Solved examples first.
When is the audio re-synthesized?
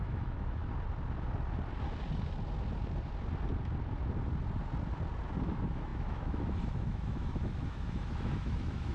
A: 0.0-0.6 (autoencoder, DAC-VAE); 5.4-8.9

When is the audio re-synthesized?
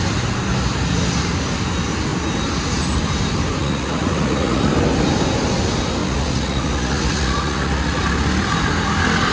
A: 3.6-4.7 (vocoder, Vocos); 6.0-8.0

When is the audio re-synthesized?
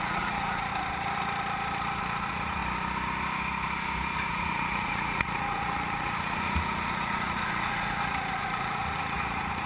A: 0.0-0.7 (vocoder, Vocos); 2.0-2.6; 4.3-9.7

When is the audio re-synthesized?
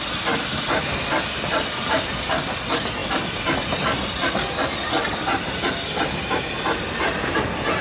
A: none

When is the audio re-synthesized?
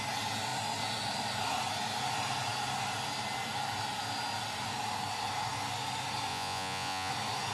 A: 6.3-7.1 (vocoder, Vocos)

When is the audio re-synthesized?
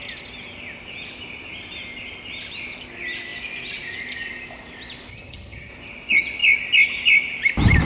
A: 5.1-5.7 (vocoder, HiFi-GAN)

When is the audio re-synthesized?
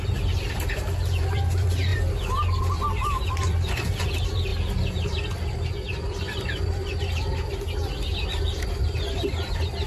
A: 0.0-1.9 (vocoder, BigVGAN v2); 2.6-4.5; 9.1-9.9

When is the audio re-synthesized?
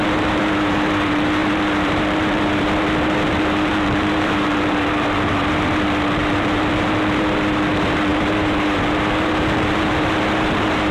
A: 0.0-10.9 (vocoder, BigVGAN v2)